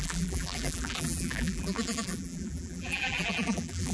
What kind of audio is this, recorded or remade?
remade